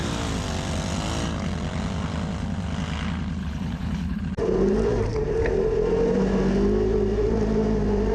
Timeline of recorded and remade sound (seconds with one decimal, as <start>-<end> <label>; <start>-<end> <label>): 0.0-3.4 recorded; 3.4-4.2 remade; 4.2-8.1 recorded